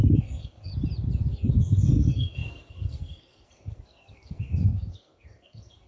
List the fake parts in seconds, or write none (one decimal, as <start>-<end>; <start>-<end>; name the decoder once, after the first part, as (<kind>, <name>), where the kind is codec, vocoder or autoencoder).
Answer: 0.0-0.7 (codec, SNAC); 1.3-5.9